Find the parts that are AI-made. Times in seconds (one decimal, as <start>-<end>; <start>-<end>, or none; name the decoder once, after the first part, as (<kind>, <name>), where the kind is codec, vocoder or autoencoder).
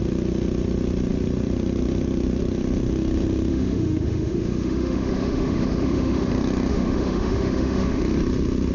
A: 3.5-6.3 (autoencoder, DAC-VAE); 6.7-8.0